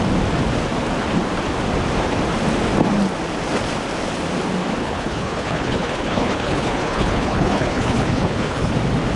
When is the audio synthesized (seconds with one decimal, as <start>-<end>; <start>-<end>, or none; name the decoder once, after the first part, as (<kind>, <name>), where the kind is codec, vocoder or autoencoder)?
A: 4.8-8.7 (codec, HILCodec)